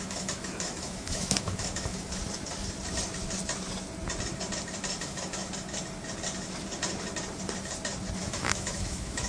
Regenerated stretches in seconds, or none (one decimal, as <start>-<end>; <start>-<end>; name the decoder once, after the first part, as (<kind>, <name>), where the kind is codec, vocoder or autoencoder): 0.0-2.2 (autoencoder, DAC-VAE); 5.0-5.4; 8.2-9.3